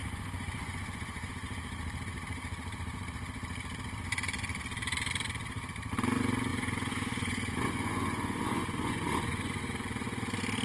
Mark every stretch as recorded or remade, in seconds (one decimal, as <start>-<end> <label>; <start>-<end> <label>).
0.0-1.3 remade; 1.3-6.5 recorded; 6.5-9.6 remade; 9.6-10.6 recorded

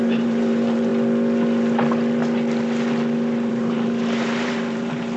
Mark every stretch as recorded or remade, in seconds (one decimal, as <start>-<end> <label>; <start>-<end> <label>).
0.0-0.9 remade; 0.9-3.5 recorded; 3.5-5.2 remade

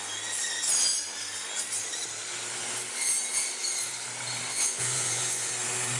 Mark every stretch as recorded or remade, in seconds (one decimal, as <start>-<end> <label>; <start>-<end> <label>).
0.0-4.5 recorded; 4.5-5.5 remade; 5.5-6.0 recorded

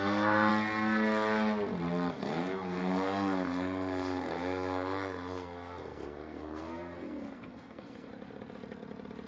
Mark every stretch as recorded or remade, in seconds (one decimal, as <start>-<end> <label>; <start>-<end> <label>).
0.0-0.5 remade; 0.5-2.1 recorded; 2.1-8.1 remade; 8.1-9.3 recorded

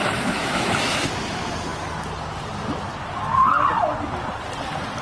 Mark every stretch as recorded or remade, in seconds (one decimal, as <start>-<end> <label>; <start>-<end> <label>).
0.0-1.1 remade; 1.1-5.0 recorded